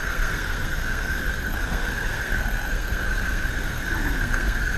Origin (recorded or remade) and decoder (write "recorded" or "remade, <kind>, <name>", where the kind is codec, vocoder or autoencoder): remade, codec, SNAC